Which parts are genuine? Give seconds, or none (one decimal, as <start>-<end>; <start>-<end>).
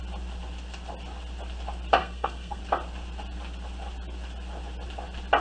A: 0.0-2.0; 2.6-5.4